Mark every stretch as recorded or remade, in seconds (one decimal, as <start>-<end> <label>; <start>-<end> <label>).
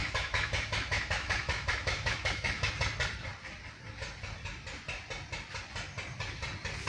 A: 0.0-2.7 remade; 2.7-6.9 recorded